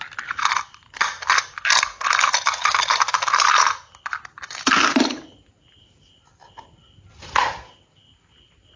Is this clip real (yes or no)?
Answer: yes